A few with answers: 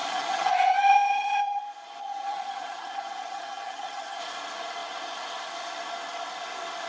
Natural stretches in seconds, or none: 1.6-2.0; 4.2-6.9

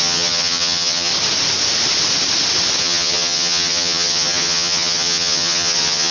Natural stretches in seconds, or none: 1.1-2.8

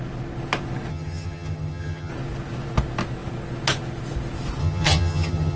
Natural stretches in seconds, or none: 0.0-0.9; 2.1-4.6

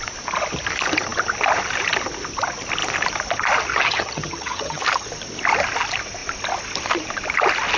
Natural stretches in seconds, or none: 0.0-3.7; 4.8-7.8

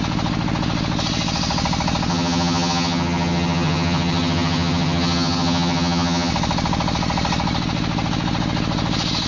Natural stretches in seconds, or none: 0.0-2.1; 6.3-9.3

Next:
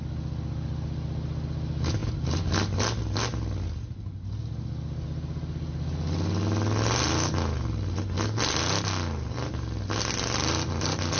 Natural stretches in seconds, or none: 0.0-11.2

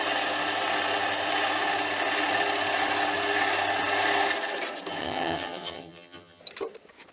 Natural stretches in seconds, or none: 0.0-5.0; 6.4-7.1